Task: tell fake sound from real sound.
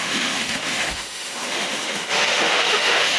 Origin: fake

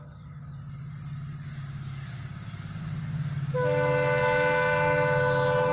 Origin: real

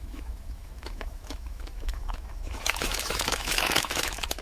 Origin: fake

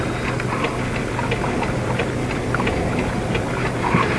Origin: real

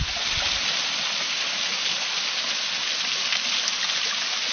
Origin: real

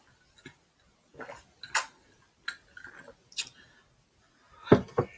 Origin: real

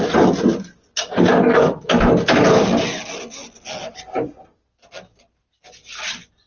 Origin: real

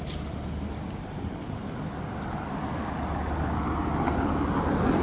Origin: real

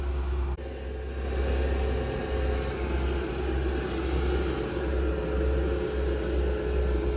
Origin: real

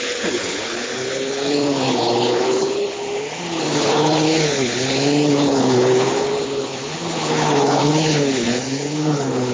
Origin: fake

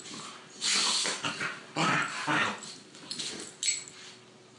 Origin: real